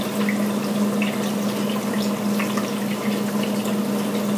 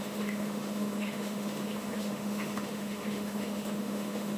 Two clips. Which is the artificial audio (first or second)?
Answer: second